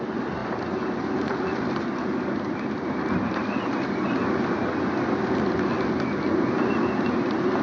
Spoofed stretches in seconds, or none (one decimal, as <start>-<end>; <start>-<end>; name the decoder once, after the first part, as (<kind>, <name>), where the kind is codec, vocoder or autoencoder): 0.4-1.4 (vocoder, BigVGAN v2)